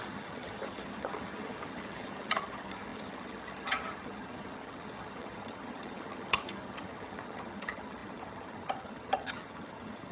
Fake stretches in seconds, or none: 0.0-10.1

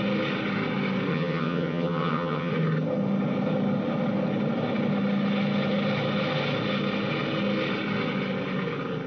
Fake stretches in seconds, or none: 1.1-2.5

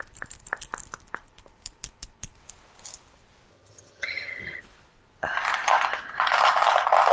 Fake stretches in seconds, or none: 3.5-4.6

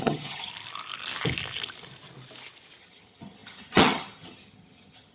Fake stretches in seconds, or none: 0.0-0.5; 2.8-5.1

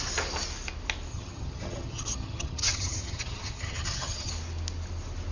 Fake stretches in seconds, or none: 1.1-4.3

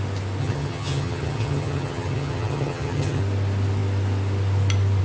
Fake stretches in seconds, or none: 0.4-3.2

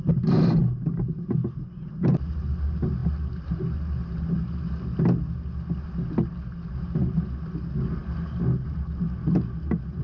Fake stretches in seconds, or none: none

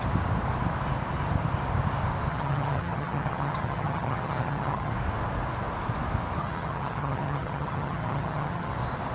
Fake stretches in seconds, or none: 2.3-4.9; 6.4-8.7